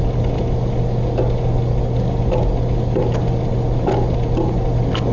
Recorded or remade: recorded